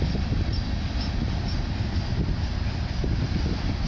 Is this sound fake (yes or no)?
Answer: no